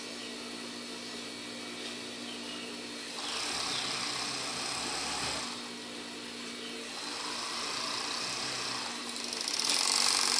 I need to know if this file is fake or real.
real